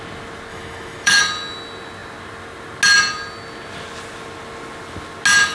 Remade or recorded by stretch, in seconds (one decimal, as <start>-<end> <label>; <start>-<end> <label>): 0.0-0.5 recorded; 0.5-1.2 remade; 1.2-5.5 recorded